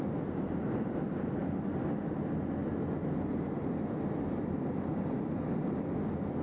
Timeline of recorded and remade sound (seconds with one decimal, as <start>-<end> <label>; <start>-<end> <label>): 0.0-6.4 recorded